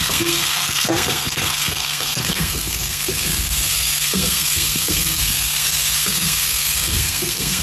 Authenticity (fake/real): fake